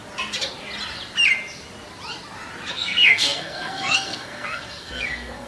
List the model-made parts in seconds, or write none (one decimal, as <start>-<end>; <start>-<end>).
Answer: 2.7-5.5